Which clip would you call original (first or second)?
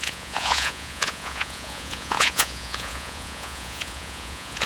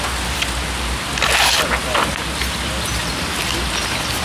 second